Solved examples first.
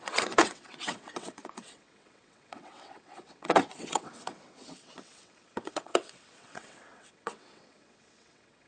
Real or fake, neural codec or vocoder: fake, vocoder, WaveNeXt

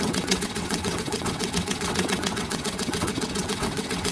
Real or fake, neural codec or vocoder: fake, vocoder, WaveNeXt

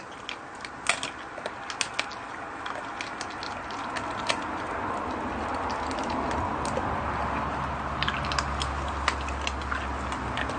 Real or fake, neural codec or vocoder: real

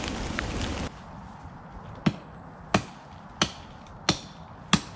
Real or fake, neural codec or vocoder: real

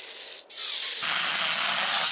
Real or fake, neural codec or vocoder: real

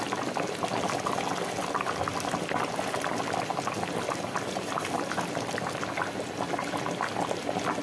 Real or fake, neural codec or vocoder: real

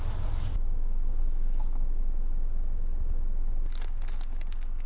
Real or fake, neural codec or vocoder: real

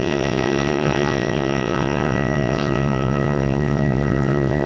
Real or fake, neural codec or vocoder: fake, vocoder, WaveNeXt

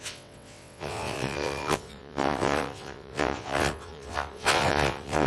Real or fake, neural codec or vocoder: fake, vocoder, WaveNeXt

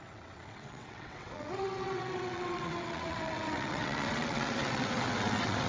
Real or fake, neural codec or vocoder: fake, vocoder, WaveNeXt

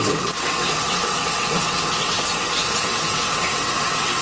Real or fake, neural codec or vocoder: fake, vocoder, WaveNeXt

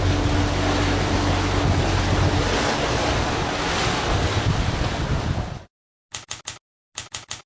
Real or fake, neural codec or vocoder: real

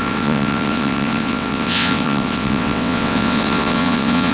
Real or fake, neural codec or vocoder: fake, vocoder, WaveNeXt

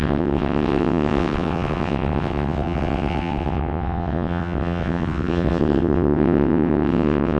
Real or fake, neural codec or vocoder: fake, vocoder, WaveNeXt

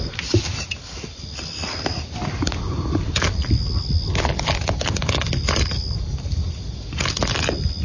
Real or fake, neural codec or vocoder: real